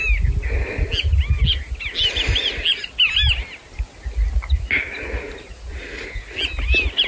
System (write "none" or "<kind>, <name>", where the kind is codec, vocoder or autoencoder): none